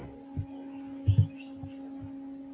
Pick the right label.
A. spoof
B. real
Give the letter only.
B